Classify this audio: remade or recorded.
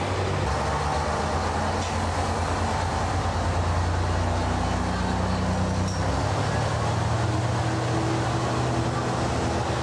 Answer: recorded